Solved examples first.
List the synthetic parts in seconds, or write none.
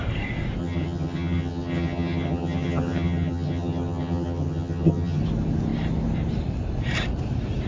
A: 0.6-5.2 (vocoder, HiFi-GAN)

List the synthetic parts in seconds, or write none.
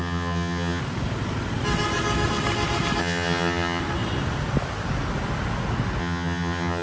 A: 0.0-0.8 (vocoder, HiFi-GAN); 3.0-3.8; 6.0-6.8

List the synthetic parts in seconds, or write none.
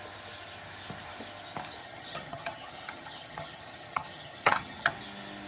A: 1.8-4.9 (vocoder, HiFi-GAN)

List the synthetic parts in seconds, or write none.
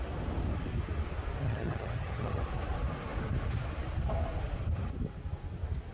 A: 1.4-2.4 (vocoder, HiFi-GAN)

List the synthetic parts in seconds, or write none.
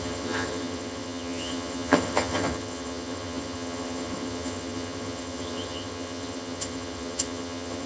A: 0.0-7.9 (vocoder, HiFi-GAN)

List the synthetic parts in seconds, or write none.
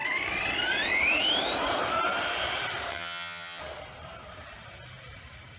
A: 2.9-3.6 (vocoder, HiFi-GAN)